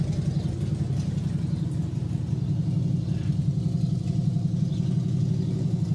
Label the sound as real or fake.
real